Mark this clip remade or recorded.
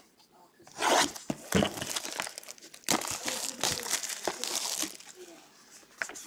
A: recorded